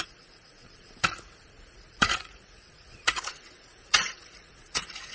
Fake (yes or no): yes